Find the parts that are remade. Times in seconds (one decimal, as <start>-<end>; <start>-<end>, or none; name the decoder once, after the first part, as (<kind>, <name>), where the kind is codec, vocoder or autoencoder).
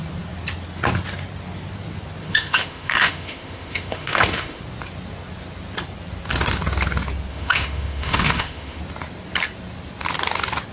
2.2-4.6 (autoencoder, DAC-VAE); 7.3-8.8